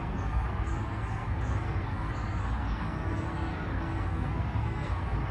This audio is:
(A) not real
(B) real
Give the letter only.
A